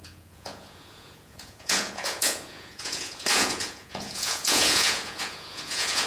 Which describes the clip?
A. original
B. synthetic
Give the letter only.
B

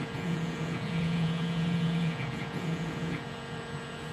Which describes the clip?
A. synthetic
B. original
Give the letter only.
A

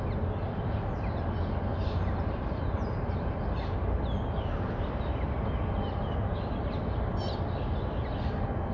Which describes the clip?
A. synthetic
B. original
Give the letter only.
B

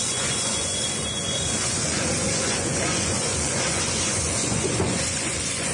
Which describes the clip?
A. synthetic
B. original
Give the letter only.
A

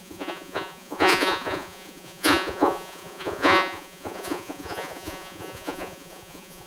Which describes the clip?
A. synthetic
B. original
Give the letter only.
A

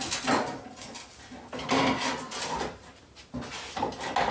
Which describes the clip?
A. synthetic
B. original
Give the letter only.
B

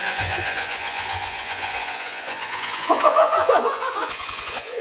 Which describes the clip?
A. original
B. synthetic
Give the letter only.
B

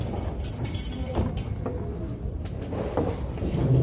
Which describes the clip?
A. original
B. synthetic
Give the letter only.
A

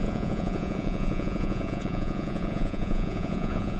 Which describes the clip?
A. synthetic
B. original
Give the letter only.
A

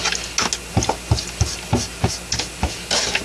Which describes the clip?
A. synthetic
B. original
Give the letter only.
B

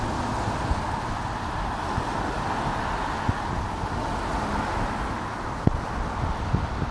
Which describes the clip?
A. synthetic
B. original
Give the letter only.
B